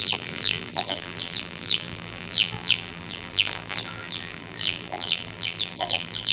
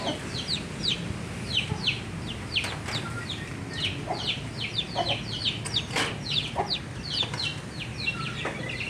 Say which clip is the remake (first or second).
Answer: first